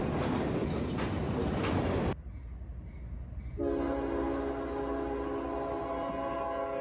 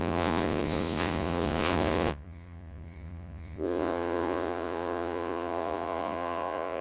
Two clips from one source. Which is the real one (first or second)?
first